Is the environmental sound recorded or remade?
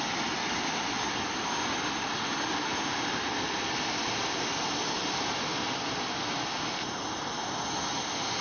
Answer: recorded